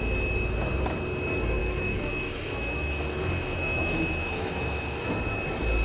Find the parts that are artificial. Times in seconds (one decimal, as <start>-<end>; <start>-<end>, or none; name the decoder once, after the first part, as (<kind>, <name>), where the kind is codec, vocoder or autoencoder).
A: 1.6-5.1 (autoencoder, DAC-VAE)